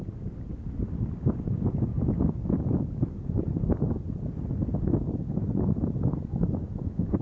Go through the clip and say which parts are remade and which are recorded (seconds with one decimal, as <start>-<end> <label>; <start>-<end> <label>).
0.0-7.2 recorded